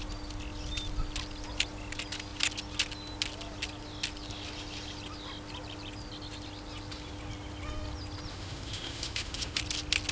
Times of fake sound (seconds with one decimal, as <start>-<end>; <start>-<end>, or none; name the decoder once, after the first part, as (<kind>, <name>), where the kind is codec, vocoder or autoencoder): 8.3-9.6 (autoencoder, DAC-VAE)